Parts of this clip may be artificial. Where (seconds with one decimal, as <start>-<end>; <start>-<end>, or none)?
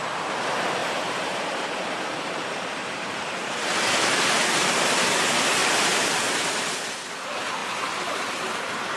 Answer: 0.8-3.5; 5.6-7.0